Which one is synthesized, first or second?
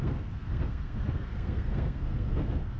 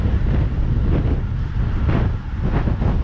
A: first